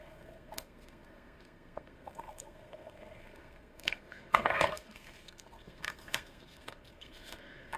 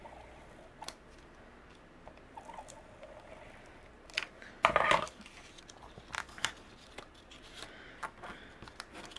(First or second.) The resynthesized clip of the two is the first